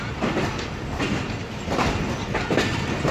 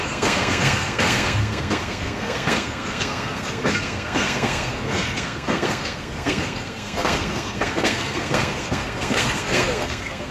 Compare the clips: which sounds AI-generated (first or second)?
second